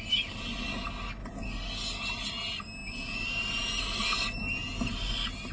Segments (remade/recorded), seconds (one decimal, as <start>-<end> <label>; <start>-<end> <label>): 0.0-5.5 recorded